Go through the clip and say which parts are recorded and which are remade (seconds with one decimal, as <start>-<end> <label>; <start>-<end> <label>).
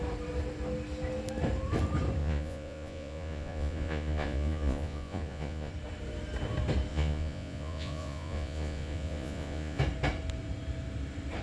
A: 0.0-2.2 recorded; 2.2-5.7 remade; 5.7-6.9 recorded; 6.9-9.8 remade; 9.8-11.4 recorded